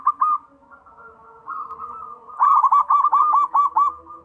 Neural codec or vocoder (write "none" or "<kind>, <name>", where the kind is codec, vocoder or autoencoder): none